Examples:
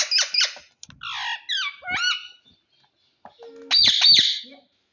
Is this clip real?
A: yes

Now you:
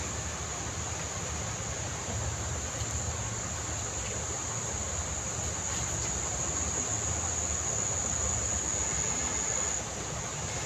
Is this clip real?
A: yes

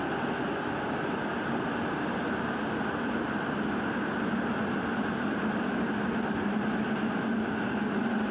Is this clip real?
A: yes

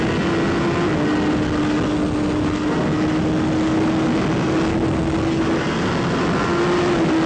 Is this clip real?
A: yes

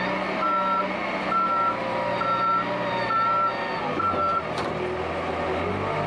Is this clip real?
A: yes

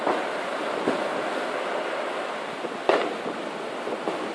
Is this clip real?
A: yes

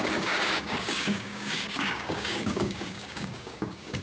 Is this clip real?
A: no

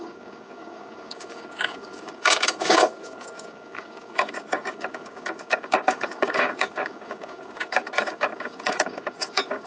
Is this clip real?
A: no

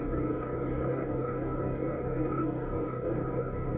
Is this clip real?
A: no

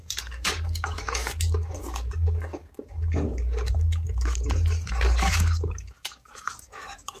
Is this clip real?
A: no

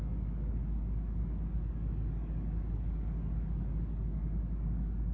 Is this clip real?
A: no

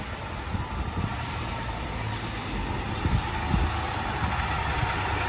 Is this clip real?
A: yes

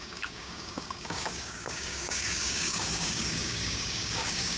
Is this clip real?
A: no